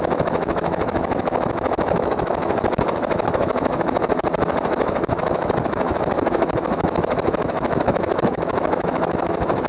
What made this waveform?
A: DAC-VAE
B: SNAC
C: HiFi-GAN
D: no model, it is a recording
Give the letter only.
A